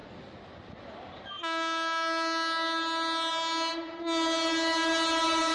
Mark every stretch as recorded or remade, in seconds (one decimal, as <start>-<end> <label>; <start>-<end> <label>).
0.0-5.5 recorded